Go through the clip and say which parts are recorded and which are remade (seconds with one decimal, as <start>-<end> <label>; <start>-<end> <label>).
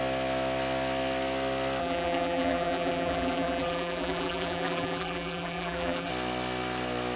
0.0-1.8 recorded; 1.8-6.1 remade; 6.1-7.2 recorded